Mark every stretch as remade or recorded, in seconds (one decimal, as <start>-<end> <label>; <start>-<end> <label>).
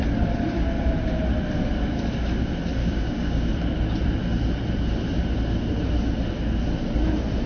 0.0-2.8 recorded; 2.8-3.5 remade; 3.5-7.5 recorded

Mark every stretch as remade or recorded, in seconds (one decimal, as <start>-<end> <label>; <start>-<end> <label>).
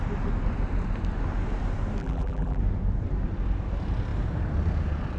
0.0-2.0 recorded; 2.0-2.6 remade; 2.6-5.2 recorded